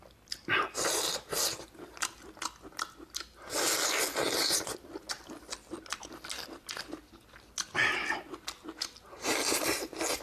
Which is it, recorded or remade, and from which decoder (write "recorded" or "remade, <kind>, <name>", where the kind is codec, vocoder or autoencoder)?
recorded